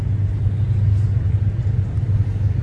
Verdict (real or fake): real